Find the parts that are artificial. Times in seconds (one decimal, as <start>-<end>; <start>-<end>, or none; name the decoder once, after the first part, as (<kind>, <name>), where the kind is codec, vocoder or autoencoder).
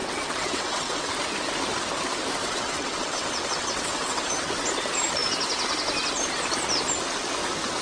0.0-1.1 (vocoder, WaveNeXt); 2.4-4.3